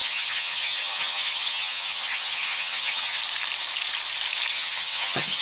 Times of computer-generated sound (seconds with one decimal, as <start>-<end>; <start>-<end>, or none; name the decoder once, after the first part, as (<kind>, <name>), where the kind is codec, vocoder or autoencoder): 0.0-3.2 (vocoder, HiFi-GAN); 4.5-5.4